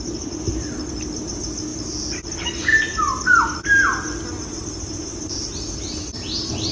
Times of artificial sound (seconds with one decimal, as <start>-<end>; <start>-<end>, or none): none